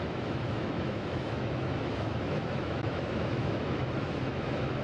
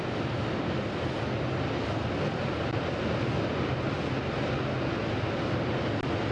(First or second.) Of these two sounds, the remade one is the first